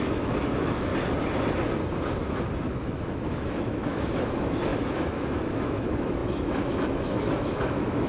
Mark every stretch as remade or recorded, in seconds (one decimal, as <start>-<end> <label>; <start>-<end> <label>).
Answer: 0.0-0.9 remade; 0.9-2.6 recorded; 2.6-8.1 remade